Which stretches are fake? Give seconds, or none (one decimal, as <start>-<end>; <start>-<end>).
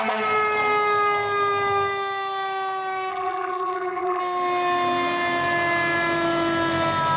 3.1-4.2